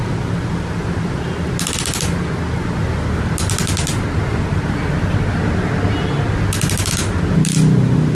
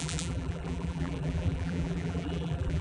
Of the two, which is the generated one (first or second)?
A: second